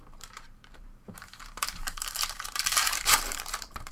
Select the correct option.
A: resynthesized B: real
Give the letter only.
A